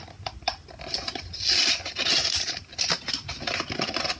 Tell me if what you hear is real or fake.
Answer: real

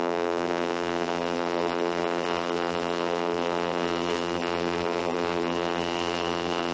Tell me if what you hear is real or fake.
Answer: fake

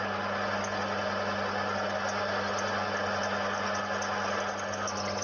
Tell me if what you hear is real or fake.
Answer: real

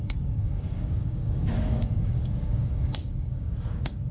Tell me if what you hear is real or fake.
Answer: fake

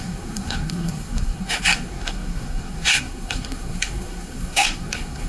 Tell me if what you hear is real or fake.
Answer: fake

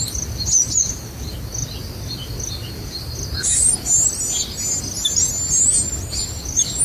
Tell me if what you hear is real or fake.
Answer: real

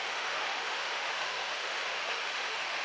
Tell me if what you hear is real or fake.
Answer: fake